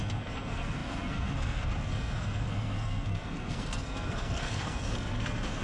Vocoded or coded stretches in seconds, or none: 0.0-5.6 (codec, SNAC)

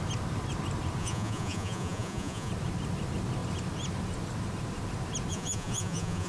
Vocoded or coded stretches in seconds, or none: 1.0-2.5 (vocoder, Vocos); 5.3-6.3

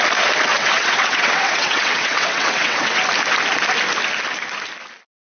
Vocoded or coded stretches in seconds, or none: 0.5-3.0 (vocoder, WaveNeXt)

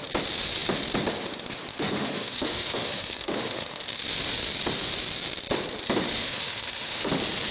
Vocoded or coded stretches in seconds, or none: 1.7-4.0 (autoencoder, DAC-VAE); 6.2-7.1